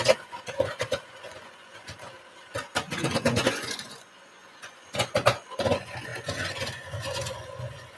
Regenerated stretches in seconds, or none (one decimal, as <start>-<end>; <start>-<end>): 0.0-2.1; 2.9-8.0